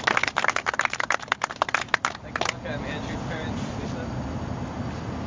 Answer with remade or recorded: recorded